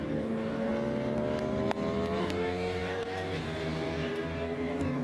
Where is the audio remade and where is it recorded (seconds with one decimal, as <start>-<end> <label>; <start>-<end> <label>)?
0.0-0.7 remade; 0.7-2.2 recorded; 2.2-5.0 remade